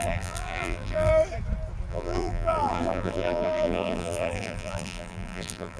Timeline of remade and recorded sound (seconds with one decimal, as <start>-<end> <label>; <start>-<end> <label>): 0.0-1.1 remade; 1.1-1.9 recorded; 1.9-5.8 remade